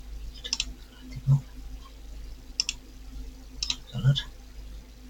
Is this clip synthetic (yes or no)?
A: no